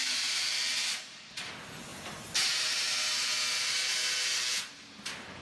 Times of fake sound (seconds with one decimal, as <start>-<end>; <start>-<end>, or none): 0.0-1.5